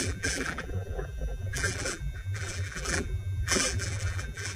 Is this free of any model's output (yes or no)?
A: no